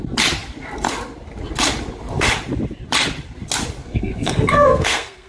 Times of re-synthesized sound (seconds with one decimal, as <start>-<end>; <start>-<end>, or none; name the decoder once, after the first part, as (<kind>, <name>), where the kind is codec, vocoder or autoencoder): 3.8-5.3 (codec, SNAC)